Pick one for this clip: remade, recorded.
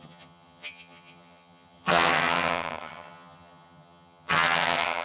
remade